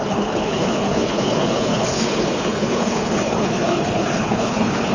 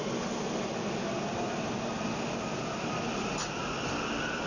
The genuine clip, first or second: second